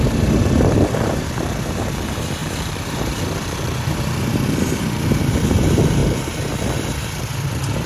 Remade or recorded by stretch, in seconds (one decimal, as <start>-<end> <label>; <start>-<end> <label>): 0.0-7.9 remade